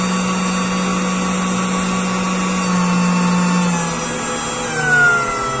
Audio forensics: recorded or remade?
recorded